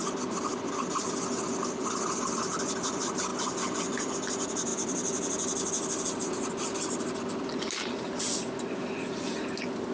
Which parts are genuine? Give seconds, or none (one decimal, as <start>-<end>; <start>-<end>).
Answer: 0.0-9.9